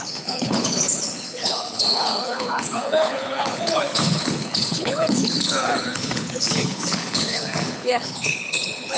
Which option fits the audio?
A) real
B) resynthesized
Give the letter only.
B